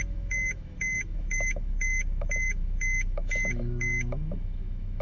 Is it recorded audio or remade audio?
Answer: remade